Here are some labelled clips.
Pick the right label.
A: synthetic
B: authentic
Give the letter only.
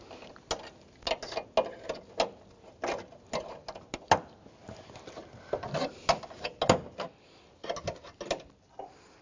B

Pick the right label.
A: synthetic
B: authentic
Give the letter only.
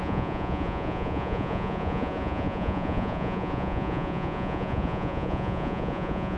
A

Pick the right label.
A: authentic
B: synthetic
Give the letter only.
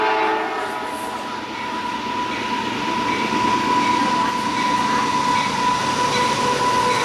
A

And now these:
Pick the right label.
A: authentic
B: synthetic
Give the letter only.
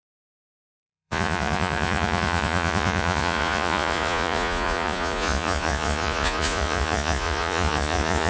B